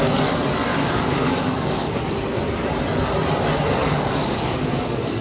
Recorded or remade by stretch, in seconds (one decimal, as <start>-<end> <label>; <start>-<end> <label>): 0.0-0.7 recorded; 0.7-2.0 remade; 2.0-3.8 recorded; 3.8-5.2 remade